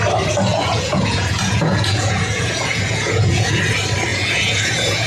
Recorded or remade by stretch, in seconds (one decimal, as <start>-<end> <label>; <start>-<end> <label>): 0.0-0.5 recorded; 0.5-3.6 remade; 3.6-4.1 recorded; 4.1-5.1 remade